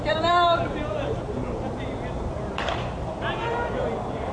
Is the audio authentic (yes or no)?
no